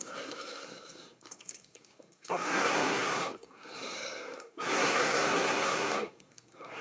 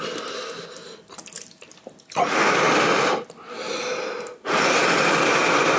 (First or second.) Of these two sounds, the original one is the second